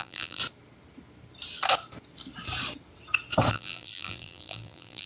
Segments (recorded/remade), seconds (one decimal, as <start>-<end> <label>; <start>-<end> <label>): 0.0-0.4 remade; 0.4-3.5 recorded; 3.5-5.1 remade